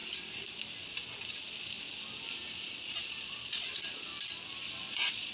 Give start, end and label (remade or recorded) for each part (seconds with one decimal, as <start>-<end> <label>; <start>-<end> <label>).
0.0-2.9 recorded; 2.9-4.1 remade; 4.1-4.8 recorded; 4.8-5.3 remade